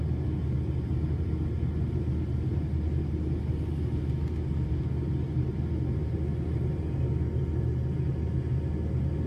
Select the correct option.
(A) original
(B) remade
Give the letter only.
A